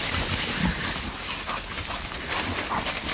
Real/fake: real